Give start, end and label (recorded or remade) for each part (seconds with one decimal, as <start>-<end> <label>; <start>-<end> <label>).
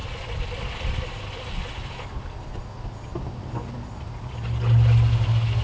0.0-5.6 recorded